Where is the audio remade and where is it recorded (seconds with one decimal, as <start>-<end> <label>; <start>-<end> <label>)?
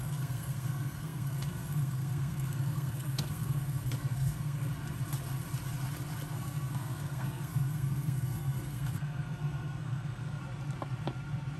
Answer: 0.0-4.7 remade; 4.7-6.3 recorded; 6.3-10.4 remade; 10.4-11.6 recorded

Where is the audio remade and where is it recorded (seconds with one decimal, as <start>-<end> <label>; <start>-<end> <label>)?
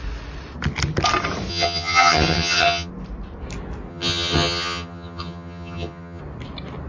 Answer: 0.0-1.5 recorded; 1.5-2.9 remade; 2.9-3.9 recorded; 3.9-6.2 remade; 6.2-6.9 recorded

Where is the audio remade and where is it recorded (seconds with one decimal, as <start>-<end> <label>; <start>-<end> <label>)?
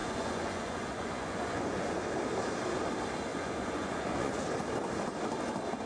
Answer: 0.0-2.0 remade; 2.0-3.3 recorded; 3.3-4.4 remade; 4.4-5.9 recorded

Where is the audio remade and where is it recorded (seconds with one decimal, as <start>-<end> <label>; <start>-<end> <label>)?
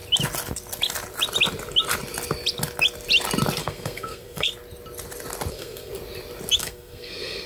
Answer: 0.0-3.6 recorded; 3.6-4.5 remade; 4.5-5.5 recorded; 5.5-5.9 remade; 5.9-6.6 recorded; 6.6-7.5 remade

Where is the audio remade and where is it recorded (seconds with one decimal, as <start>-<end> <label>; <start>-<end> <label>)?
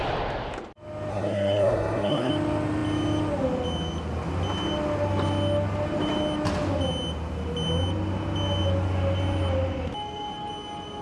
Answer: 0.0-1.1 recorded; 1.1-2.3 remade; 2.3-11.0 recorded